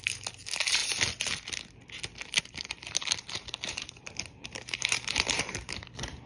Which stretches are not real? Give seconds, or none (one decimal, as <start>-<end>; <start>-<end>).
0.0-0.8; 2.4-6.3